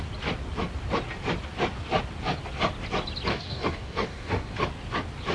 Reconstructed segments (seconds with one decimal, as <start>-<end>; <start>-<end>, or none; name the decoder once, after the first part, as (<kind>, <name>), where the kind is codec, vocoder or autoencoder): 3.3-4.5 (codec, DAC)